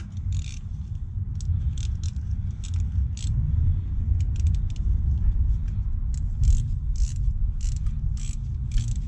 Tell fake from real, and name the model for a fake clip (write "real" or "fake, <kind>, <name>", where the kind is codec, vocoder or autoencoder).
real